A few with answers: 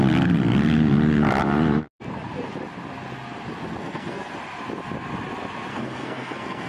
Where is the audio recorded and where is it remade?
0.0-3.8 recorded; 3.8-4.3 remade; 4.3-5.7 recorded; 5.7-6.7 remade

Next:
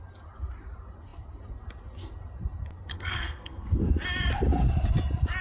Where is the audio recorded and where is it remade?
0.0-2.9 recorded; 2.9-3.9 remade; 3.9-5.4 recorded